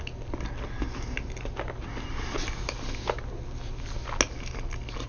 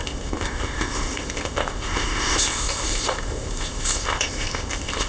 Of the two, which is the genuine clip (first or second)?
first